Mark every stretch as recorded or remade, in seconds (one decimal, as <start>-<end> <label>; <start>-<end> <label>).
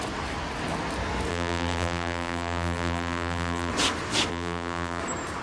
0.0-1.3 recorded; 1.3-3.7 remade; 3.7-4.3 recorded; 4.3-5.0 remade; 5.0-5.4 recorded